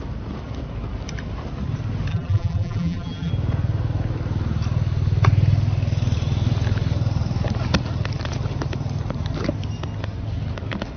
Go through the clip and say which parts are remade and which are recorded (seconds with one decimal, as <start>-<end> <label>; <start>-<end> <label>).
0.0-2.1 recorded; 2.1-3.3 remade; 3.3-11.0 recorded